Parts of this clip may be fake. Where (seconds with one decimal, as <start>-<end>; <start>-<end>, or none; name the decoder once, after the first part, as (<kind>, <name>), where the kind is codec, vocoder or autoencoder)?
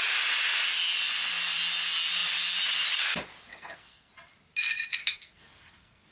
3.5-4.1 (codec, SNAC); 5.0-6.1